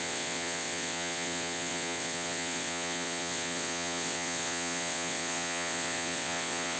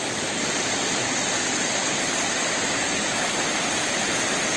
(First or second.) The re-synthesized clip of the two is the first